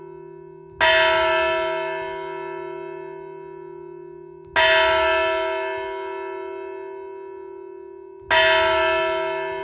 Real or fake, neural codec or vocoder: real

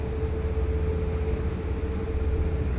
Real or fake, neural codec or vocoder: real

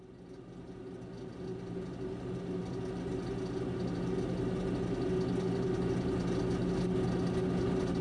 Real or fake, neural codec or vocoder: real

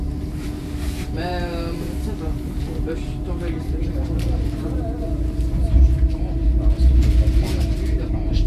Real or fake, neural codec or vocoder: fake, vocoder, BigVGAN v2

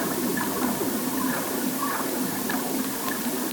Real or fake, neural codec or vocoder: real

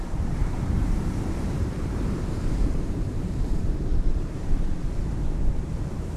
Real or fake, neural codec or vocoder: fake, vocoder, BigVGAN v2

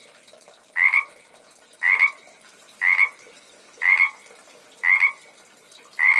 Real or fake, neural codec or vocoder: fake, vocoder, BigVGAN v2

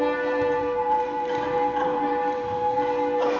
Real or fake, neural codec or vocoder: fake, vocoder, BigVGAN v2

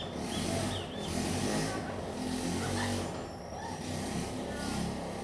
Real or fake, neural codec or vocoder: real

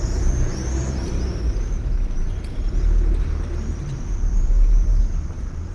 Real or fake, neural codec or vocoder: fake, vocoder, BigVGAN v2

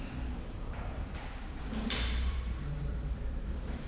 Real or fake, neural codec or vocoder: fake, vocoder, BigVGAN v2